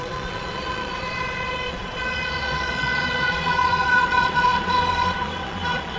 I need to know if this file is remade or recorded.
remade